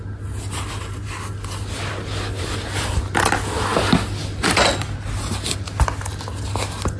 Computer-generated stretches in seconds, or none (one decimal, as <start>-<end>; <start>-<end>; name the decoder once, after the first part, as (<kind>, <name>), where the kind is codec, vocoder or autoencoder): none